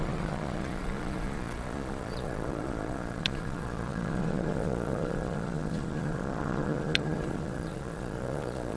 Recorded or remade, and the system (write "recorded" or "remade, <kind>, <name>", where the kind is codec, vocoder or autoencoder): remade, vocoder, Vocos